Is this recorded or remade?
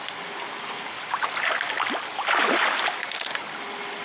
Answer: recorded